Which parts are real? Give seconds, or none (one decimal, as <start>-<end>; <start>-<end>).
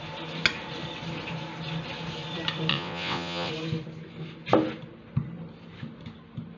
0.0-2.7; 3.5-6.6